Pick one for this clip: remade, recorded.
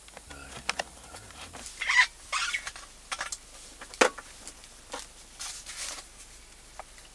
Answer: recorded